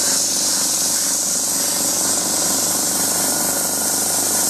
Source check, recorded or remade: recorded